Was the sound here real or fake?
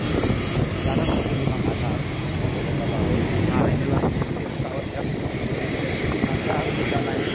real